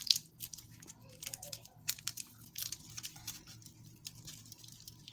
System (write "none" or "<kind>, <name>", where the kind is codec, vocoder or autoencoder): vocoder, BigVGAN v2